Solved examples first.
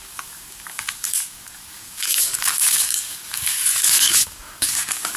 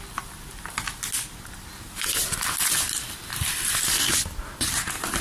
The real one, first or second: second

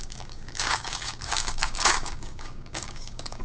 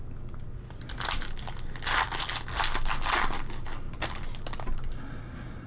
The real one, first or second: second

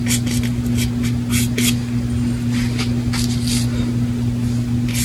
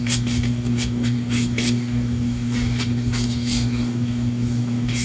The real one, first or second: first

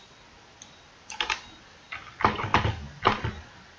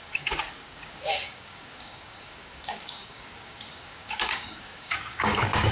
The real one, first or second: first